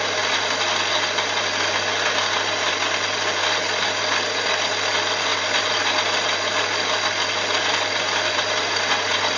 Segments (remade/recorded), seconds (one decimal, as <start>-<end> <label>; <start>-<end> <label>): 0.0-9.4 recorded